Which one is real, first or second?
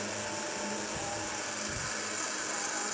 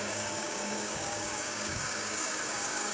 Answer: first